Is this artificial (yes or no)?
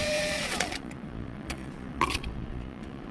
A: yes